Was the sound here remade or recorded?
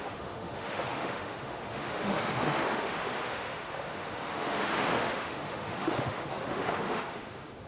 remade